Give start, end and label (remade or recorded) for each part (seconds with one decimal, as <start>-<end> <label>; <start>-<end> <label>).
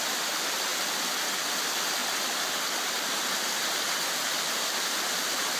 0.0-2.0 remade; 2.0-5.1 recorded; 5.1-5.6 remade